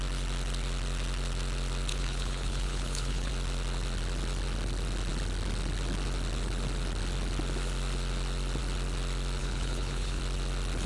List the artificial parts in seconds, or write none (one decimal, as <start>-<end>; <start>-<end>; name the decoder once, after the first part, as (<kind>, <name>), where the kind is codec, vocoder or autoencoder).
1.9-3.3 (codec, HILCodec); 9.4-10.2